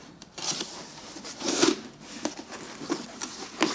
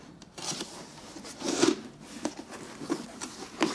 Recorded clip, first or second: second